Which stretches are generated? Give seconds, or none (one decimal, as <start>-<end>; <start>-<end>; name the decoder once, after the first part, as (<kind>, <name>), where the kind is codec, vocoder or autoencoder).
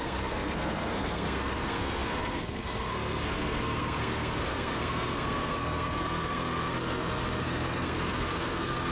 0.0-8.9 (codec, SNAC)